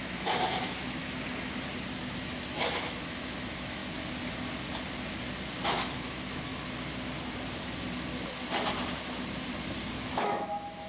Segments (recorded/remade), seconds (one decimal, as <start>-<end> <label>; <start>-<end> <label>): 0.0-1.0 remade; 1.0-2.0 recorded; 2.0-3.8 remade; 3.8-5.7 recorded; 5.7-6.5 remade; 6.5-9.9 recorded; 9.9-10.9 remade